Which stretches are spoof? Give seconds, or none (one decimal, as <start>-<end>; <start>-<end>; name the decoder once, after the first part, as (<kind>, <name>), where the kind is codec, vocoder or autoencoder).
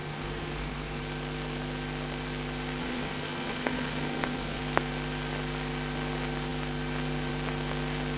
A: 0.0-1.0 (codec, SNAC); 2.8-4.6